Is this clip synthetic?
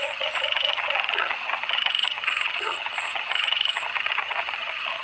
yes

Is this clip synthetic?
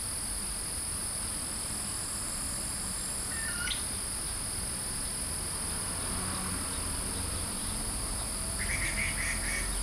no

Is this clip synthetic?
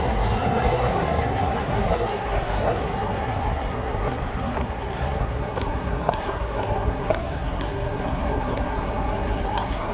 yes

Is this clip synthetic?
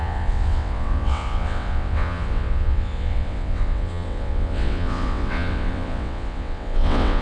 yes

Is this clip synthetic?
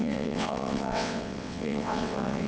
yes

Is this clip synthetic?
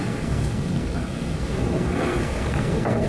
yes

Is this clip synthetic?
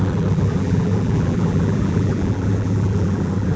yes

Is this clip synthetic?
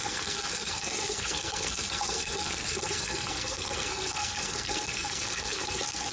yes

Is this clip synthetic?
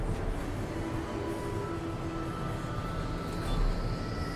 no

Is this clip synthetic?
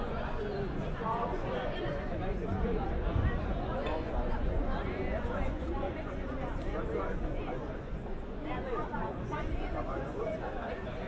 yes